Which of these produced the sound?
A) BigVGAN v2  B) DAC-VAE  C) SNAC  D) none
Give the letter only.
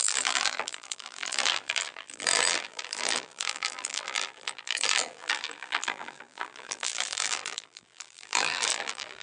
A